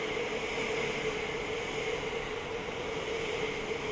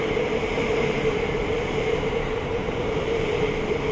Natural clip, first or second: first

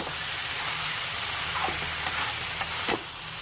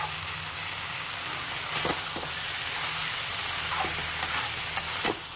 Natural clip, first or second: second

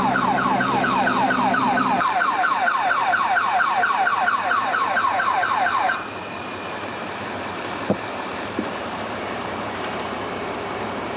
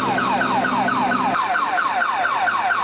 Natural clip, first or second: second